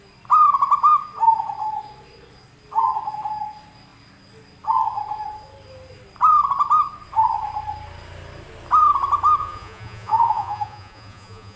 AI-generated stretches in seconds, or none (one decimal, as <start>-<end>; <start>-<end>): 9.4-11.6